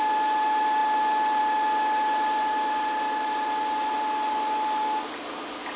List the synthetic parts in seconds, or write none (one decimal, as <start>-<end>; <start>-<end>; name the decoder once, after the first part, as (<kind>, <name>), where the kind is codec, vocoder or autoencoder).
none